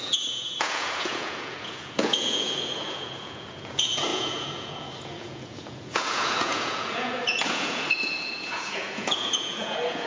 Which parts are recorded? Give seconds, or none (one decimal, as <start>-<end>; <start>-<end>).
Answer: none